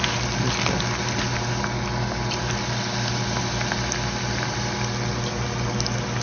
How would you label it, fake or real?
real